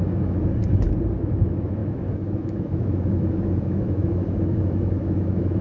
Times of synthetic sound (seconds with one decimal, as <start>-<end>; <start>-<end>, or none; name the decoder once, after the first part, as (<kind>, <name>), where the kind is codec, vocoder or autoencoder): 0.0-0.4 (autoencoder, DAC-VAE); 1.2-5.6